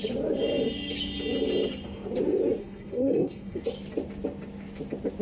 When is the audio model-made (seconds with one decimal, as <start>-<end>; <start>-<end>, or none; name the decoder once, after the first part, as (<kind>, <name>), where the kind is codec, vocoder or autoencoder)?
2.6-3.6 (codec, SNAC)